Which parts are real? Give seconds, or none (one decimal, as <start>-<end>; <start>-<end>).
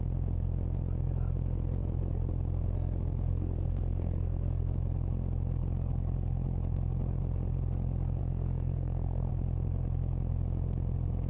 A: 0.0-3.3; 4.6-8.2; 9.3-11.3